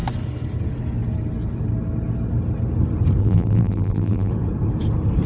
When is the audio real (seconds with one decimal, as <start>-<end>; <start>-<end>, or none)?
0.0-3.2; 4.3-5.3